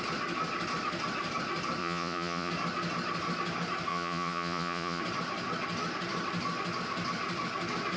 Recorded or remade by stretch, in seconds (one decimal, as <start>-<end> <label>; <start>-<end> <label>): 0.0-1.8 recorded; 1.8-2.5 remade; 2.5-3.9 recorded; 3.9-5.0 remade; 5.0-8.0 recorded